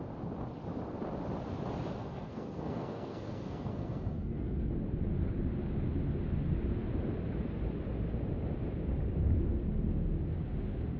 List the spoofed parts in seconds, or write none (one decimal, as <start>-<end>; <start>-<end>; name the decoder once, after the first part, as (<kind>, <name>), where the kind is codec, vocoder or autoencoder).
2.0-4.7 (codec, SNAC)